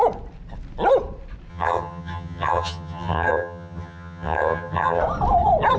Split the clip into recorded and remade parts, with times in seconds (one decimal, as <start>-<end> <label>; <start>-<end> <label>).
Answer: 0.0-1.5 recorded; 1.5-5.0 remade; 5.0-5.8 recorded